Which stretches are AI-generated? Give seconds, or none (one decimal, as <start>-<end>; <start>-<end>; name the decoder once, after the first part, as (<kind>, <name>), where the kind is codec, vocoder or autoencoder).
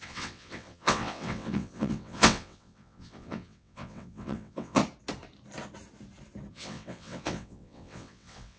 0.0-4.8 (vocoder, WaveNeXt); 6.5-8.6